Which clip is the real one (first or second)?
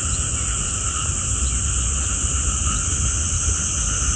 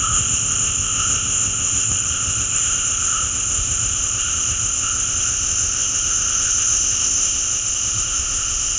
first